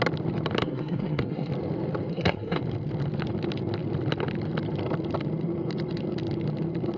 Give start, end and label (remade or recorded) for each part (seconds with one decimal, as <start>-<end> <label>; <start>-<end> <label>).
0.0-0.6 recorded; 0.6-1.5 remade; 1.5-2.1 recorded; 2.1-2.6 remade; 2.6-7.0 recorded